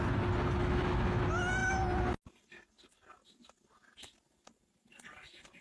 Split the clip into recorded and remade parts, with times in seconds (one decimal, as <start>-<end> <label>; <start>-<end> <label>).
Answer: 0.0-0.6 recorded; 0.6-1.2 remade; 1.2-5.6 recorded